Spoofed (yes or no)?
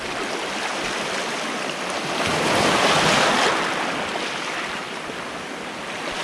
no